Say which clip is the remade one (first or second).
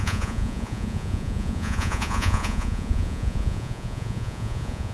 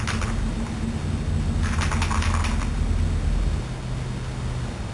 first